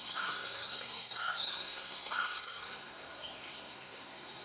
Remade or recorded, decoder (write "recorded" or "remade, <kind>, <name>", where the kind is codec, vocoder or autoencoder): remade, codec, SNAC